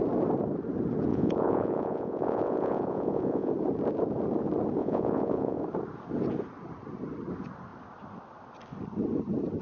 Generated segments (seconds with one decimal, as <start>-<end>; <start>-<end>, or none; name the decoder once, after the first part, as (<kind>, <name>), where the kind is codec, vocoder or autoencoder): 1.1-3.5 (vocoder, Vocos); 4.8-5.6